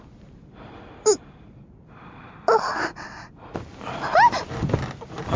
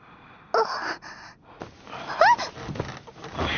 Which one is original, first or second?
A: second